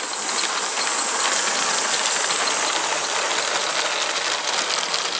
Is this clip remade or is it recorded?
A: recorded